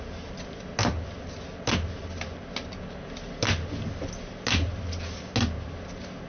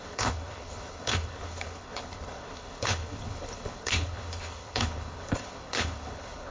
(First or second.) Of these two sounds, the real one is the first